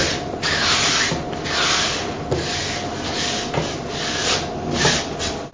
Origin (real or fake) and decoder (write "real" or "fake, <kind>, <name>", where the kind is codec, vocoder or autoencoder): real